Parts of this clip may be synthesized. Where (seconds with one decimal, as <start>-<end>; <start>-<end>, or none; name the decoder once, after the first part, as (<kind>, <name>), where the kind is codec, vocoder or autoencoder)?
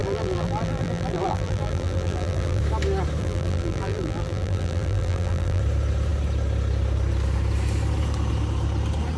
0.0-2.6 (vocoder, BigVGAN v2); 3.2-5.6